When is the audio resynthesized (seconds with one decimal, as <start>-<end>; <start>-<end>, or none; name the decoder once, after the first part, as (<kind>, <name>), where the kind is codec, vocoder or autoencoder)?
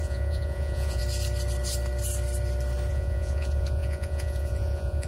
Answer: 0.0-1.0 (vocoder, Vocos); 2.9-5.1